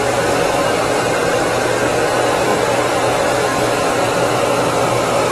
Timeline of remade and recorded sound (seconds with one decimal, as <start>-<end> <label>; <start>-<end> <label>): 0.0-5.3 recorded